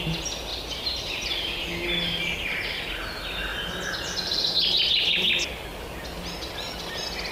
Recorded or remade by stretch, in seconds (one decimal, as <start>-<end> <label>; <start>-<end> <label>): 0.0-0.5 recorded; 0.5-1.3 remade; 1.3-7.3 recorded